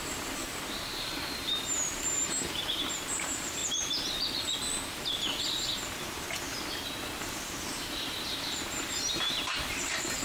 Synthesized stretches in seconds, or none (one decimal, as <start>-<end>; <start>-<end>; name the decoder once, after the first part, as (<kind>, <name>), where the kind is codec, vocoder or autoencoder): 0.0-3.6 (vocoder, BigVGAN v2); 7.4-10.2